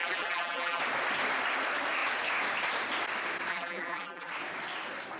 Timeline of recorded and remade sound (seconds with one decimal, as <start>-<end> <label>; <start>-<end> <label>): 0.0-0.8 remade; 0.8-3.5 recorded; 3.5-4.3 remade; 4.3-5.2 recorded